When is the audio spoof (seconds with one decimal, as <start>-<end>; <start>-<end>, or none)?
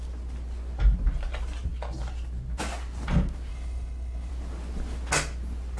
3.5-4.3